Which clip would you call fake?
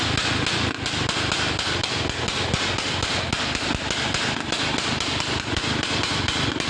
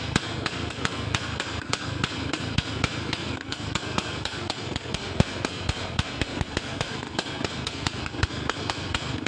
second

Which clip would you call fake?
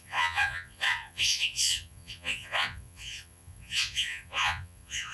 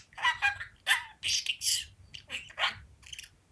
first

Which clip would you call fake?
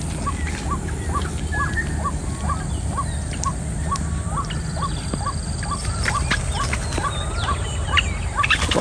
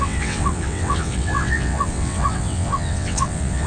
second